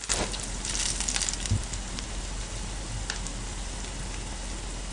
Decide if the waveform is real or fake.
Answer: real